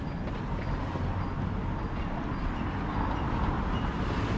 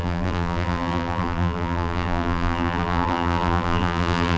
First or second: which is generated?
second